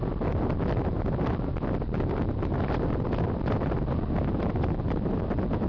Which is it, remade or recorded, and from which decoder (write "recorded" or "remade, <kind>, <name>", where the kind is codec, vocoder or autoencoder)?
remade, vocoder, BigVGAN v2